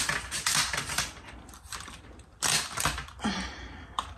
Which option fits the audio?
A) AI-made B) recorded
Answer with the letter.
B